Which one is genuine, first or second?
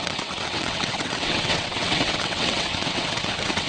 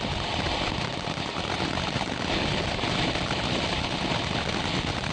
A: second